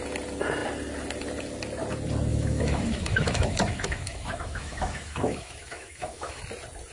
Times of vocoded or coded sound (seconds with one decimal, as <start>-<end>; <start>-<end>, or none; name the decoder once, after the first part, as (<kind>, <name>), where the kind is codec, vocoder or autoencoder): 2.3-6.4 (autoencoder, DAC-VAE)